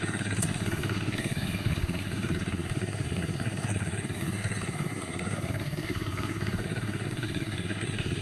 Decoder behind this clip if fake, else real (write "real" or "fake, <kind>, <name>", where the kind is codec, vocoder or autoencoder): fake, codec, SNAC